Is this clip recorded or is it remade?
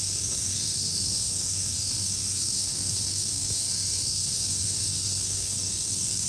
remade